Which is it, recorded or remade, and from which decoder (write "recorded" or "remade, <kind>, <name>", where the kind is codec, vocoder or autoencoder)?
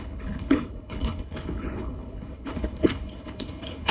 remade, codec, HILCodec